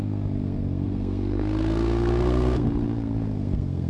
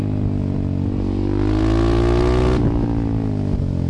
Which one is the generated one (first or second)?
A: first